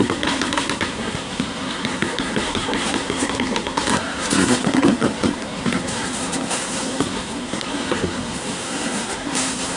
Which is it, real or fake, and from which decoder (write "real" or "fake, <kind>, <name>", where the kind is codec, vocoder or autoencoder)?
fake, codec, SNAC